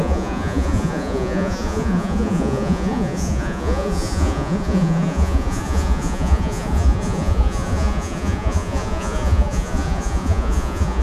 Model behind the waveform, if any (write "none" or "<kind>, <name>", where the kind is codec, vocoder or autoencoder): vocoder, Vocos